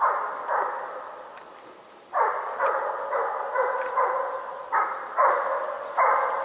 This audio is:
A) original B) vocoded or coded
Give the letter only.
A